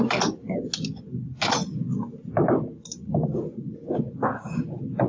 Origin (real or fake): real